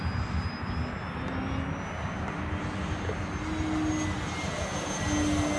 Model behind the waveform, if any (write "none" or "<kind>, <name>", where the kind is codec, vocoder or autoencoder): none